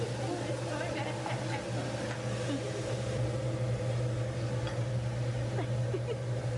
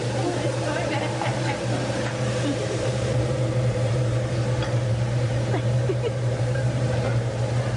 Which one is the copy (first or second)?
second